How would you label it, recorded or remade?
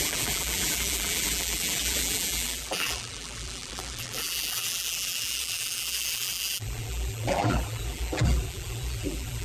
remade